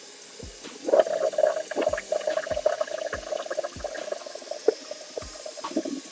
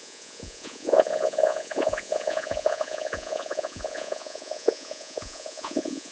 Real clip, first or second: first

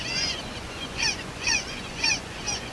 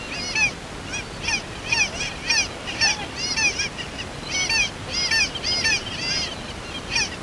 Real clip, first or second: second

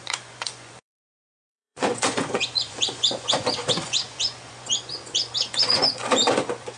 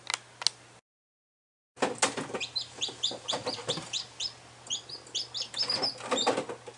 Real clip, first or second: second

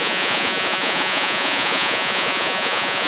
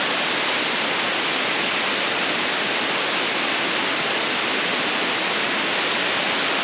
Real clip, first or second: second